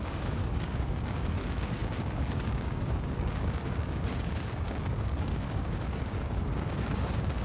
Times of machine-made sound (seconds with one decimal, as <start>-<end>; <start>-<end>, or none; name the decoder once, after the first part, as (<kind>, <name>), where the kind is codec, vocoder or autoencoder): 0.0-7.4 (codec, DAC)